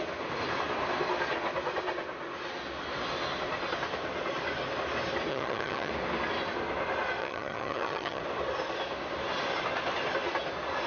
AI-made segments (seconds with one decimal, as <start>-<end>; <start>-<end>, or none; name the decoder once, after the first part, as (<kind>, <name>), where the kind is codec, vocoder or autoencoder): 5.3-5.9 (vocoder, HiFi-GAN); 7.2-8.2

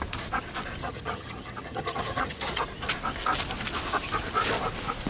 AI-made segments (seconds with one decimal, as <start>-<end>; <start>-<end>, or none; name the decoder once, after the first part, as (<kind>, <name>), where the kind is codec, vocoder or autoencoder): 0.8-2.6 (vocoder, HiFi-GAN)